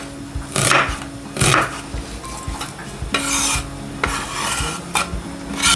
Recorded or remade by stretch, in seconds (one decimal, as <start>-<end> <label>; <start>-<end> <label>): 0.0-5.8 recorded